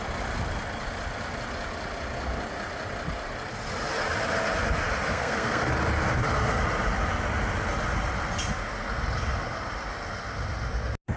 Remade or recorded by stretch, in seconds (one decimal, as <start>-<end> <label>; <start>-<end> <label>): 0.0-5.1 recorded; 5.1-5.7 remade; 5.7-11.2 recorded